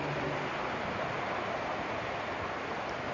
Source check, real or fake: real